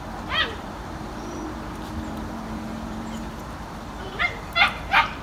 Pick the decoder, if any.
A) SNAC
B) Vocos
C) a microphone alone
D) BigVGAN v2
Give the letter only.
D